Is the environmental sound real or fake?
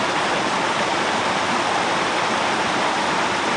real